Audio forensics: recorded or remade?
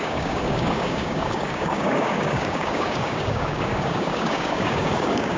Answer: remade